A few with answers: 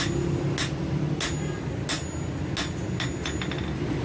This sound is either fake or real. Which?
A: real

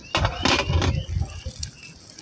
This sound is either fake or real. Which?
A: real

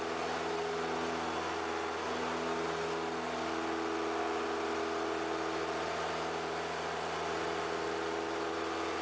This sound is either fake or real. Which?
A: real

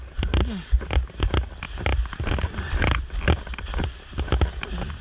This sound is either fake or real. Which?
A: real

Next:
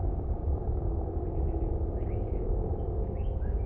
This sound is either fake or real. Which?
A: fake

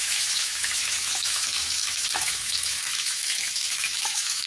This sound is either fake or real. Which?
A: fake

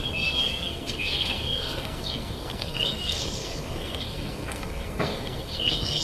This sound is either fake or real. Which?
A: fake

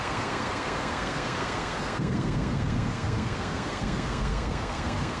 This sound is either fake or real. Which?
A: fake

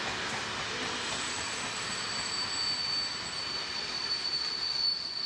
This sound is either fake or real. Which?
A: real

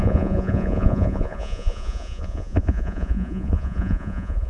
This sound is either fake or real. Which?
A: fake